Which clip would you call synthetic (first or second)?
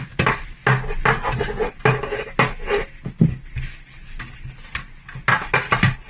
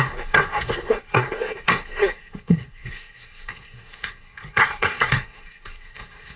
second